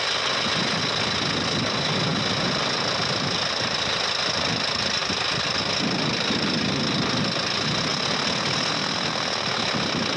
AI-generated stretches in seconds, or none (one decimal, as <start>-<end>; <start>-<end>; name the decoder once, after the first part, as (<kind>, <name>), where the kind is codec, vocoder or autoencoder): none